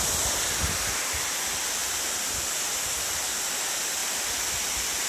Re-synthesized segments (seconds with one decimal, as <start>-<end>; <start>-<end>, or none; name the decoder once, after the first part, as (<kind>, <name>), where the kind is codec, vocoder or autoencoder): none